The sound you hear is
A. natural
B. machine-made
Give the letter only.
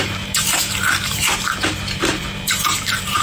B